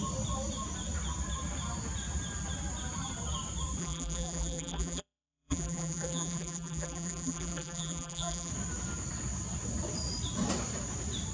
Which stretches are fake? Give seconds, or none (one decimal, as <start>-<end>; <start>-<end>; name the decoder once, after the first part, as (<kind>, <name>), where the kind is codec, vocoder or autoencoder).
3.8-8.5 (vocoder, BigVGAN v2)